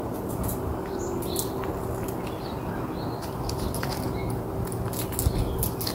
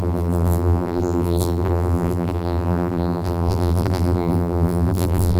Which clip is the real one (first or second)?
first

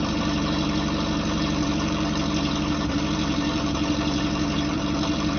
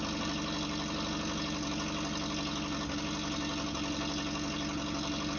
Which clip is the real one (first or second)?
second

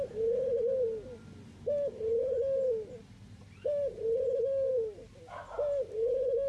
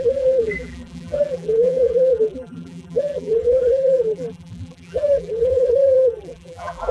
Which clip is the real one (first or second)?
first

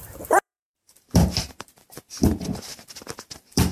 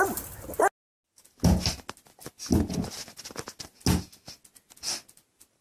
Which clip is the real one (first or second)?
second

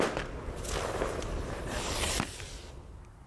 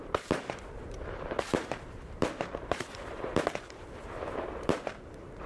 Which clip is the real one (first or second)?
first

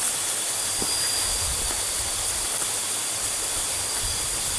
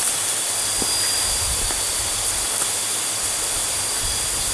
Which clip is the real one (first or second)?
second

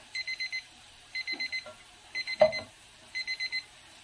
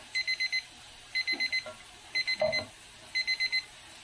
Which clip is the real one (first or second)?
second